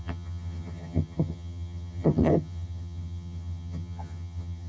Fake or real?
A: fake